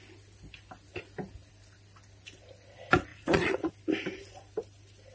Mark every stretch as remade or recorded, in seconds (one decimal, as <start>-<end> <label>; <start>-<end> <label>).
0.0-3.1 recorded; 3.1-3.7 remade; 3.7-5.1 recorded